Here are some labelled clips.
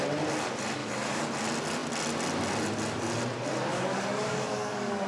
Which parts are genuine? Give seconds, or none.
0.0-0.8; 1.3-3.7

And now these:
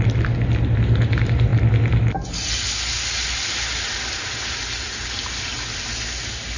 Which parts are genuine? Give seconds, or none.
0.0-6.6

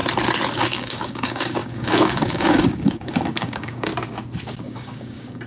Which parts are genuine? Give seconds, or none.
0.0-0.5; 3.9-4.6

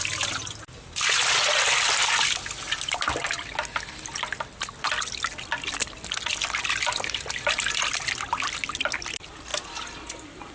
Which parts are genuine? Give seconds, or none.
0.0-10.5